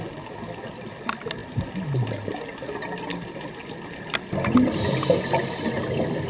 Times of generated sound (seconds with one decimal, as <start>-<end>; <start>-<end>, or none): none